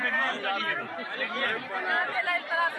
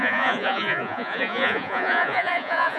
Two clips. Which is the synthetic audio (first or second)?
second